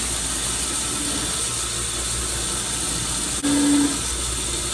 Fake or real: real